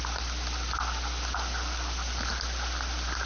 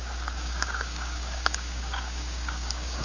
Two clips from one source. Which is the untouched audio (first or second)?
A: first